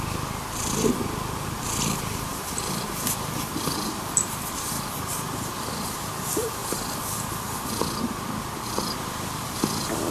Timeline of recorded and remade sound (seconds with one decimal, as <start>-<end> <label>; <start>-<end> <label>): 0.0-6.6 remade; 6.6-7.4 recorded; 7.4-10.1 remade